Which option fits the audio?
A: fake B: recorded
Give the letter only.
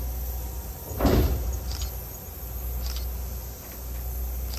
B